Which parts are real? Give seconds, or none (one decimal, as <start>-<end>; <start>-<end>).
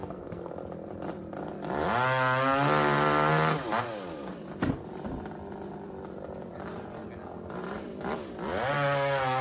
0.5-9.4